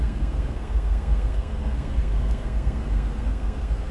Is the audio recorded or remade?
remade